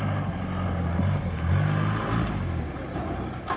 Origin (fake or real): real